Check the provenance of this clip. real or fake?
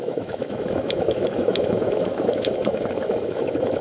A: fake